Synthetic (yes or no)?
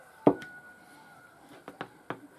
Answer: no